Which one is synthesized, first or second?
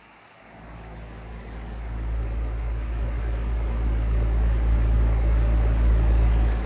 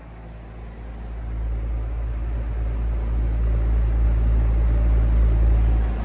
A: first